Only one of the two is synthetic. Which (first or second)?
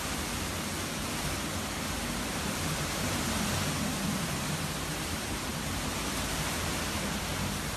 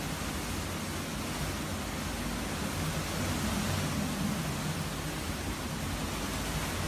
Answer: first